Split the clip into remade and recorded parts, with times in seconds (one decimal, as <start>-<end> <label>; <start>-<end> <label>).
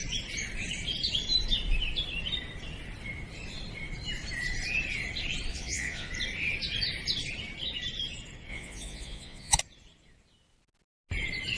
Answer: 0.0-5.5 recorded; 5.5-6.1 remade; 6.1-8.5 recorded; 8.5-9.6 remade; 9.6-11.6 recorded